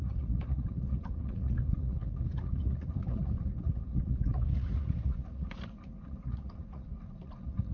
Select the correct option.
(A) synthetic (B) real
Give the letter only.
A